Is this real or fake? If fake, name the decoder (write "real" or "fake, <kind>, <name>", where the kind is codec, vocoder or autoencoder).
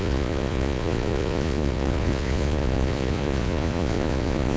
fake, vocoder, Vocos